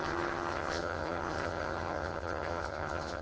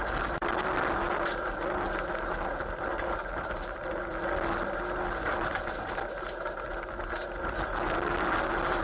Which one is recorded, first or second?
second